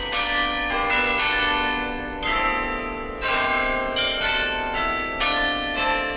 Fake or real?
real